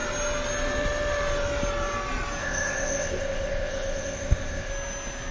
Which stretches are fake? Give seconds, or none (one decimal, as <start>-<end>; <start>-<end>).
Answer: 2.4-4.7